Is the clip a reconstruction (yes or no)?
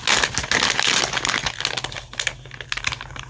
no